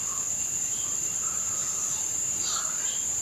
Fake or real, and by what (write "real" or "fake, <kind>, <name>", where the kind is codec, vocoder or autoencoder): fake, vocoder, BigVGAN v2